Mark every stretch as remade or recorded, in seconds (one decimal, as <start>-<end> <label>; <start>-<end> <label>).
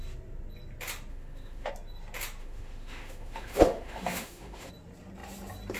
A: 0.0-1.1 recorded; 1.1-1.7 remade; 1.7-2.4 recorded; 2.4-4.7 remade; 4.7-5.8 recorded